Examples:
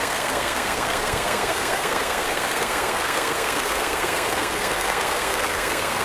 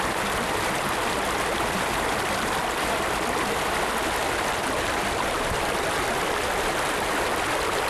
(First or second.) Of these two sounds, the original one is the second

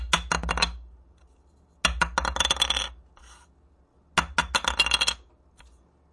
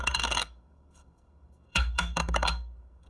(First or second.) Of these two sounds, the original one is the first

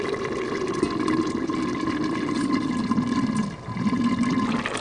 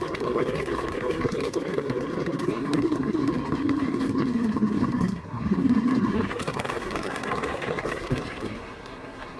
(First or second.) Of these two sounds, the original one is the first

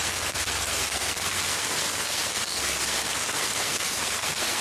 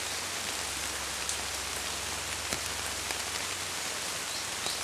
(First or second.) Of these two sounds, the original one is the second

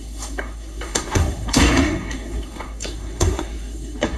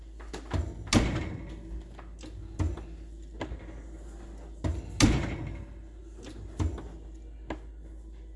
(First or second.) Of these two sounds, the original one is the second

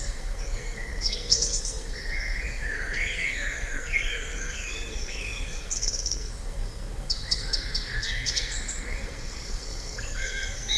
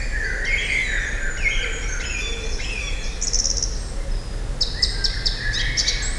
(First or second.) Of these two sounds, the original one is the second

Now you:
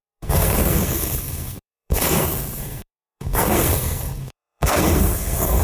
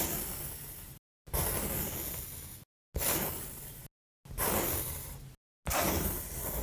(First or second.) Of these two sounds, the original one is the second